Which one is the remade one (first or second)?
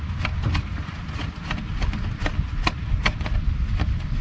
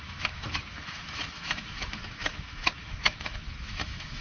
second